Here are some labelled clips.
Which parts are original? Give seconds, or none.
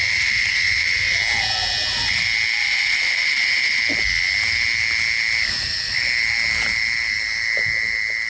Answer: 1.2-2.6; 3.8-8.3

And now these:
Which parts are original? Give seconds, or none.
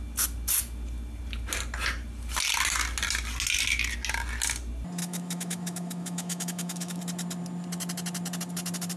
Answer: 0.0-5.0; 7.0-9.0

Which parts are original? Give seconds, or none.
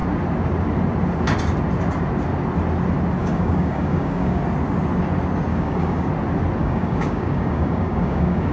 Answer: 0.0-3.2; 4.4-5.5; 6.1-6.6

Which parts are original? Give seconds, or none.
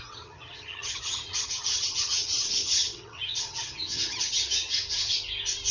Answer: 4.8-5.7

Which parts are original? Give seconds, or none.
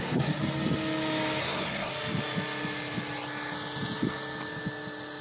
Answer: 0.4-1.4; 1.9-5.2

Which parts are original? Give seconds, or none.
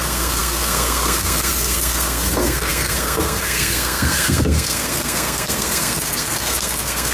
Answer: none